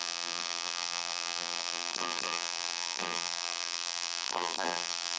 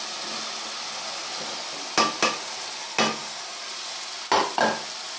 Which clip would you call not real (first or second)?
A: first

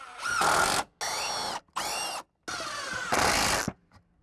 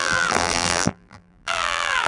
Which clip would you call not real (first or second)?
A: second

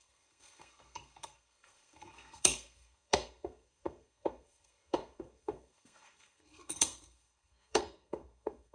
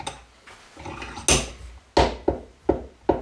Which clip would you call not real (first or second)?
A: first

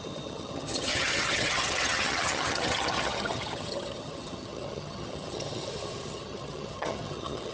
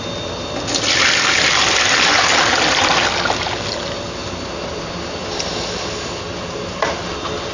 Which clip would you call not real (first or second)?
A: first